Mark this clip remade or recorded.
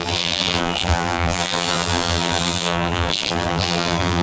remade